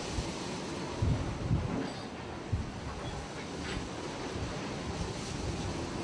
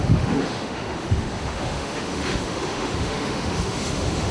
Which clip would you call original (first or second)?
first